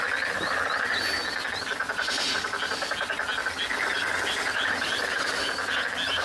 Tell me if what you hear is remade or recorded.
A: recorded